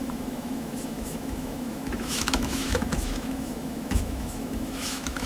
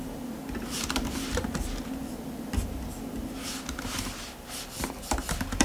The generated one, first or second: first